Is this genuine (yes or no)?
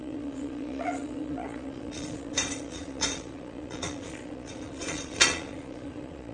no